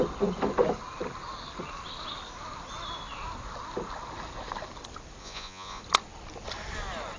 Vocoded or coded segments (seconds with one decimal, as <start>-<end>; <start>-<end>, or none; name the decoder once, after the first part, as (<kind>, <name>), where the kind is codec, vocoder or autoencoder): 5.2-5.8 (vocoder, Vocos)